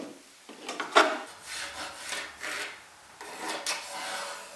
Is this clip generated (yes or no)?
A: no